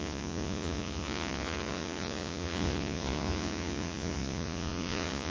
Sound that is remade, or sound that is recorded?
remade